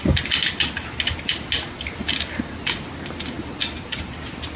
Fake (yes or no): no